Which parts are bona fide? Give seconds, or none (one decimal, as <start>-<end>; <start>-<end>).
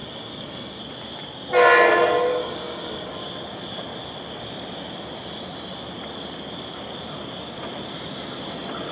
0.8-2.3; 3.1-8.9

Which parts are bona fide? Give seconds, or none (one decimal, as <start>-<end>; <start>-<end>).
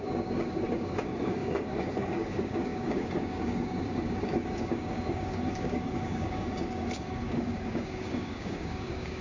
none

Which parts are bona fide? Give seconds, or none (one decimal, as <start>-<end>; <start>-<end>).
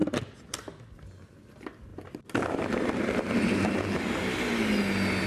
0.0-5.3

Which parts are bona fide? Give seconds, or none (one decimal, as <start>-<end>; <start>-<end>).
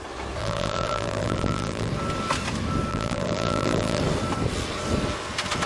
0.0-0.4; 1.9-2.9; 4.0-5.7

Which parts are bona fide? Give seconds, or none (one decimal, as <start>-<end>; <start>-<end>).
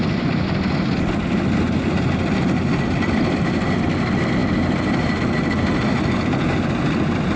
0.0-7.4